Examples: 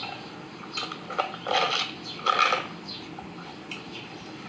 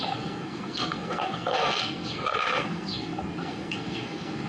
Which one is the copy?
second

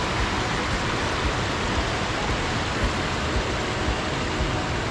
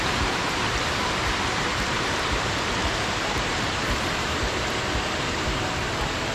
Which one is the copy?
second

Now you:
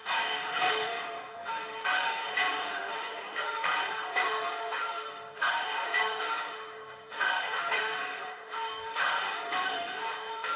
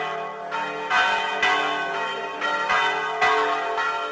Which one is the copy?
first